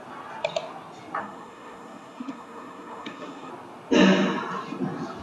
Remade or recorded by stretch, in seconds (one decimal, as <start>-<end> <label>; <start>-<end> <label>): 0.0-1.2 recorded; 1.2-3.5 remade; 3.5-5.2 recorded